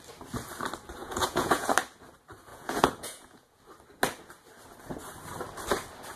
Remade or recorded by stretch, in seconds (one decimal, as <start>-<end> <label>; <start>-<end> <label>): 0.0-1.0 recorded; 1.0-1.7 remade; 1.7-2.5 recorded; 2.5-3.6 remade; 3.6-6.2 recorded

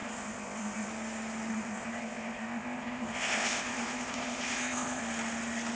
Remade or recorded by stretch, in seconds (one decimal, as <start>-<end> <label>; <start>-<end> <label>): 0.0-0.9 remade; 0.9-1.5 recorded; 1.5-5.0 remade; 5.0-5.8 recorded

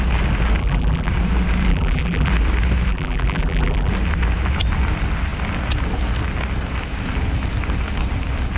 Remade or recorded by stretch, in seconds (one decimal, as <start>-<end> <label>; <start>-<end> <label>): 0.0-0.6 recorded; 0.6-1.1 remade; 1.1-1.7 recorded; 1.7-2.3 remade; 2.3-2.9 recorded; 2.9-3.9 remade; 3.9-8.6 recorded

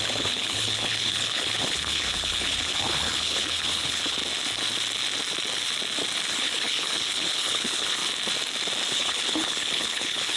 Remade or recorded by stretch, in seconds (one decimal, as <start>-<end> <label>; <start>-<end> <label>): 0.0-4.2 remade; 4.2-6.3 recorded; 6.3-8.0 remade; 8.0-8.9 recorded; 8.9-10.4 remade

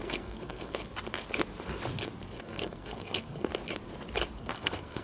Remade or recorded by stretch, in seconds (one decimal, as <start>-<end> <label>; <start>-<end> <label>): 0.0-0.8 remade; 0.8-2.4 recorded; 2.4-3.5 remade; 3.5-4.4 recorded; 4.4-5.0 remade

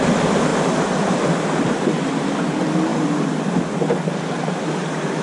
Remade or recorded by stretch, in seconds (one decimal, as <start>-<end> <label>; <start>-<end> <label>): 0.0-0.5 recorded; 0.5-2.2 remade; 2.2-5.2 recorded